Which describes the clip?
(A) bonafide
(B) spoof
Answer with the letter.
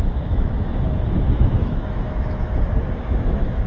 B